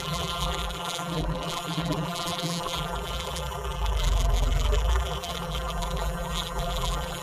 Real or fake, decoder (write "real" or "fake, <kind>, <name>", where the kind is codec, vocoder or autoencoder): fake, vocoder, BigVGAN v2